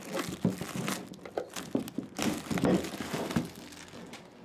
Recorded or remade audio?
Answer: recorded